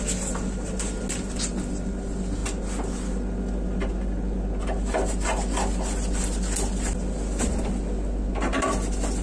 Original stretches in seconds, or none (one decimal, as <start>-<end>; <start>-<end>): 0.0-9.2